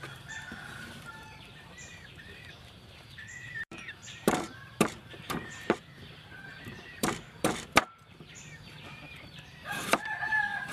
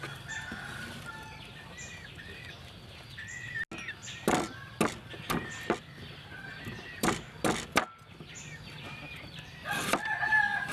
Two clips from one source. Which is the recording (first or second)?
second